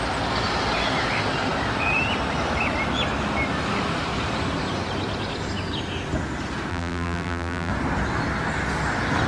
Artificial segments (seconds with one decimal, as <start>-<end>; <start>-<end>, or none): 6.7-7.7